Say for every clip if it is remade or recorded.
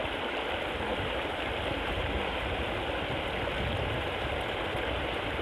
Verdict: recorded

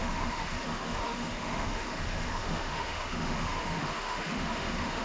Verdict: remade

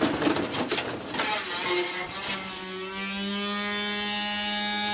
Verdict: recorded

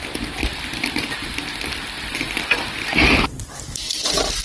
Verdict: recorded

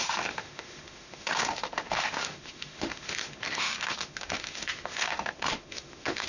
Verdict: remade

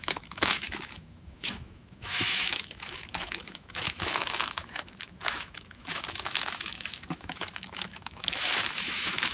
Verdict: remade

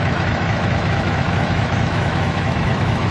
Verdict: remade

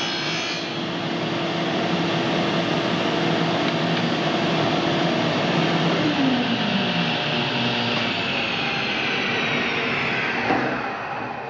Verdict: recorded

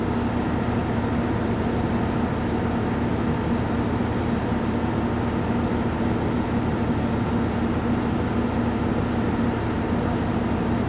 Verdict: recorded